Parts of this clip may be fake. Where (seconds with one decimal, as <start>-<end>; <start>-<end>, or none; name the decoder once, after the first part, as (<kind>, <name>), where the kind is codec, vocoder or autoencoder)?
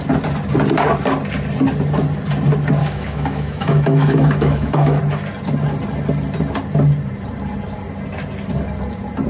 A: 2.8-5.0 (autoencoder, DAC-VAE)